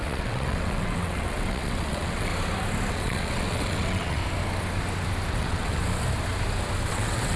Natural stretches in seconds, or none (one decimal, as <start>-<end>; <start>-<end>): 2.3-2.9; 4.2-5.3; 5.8-6.9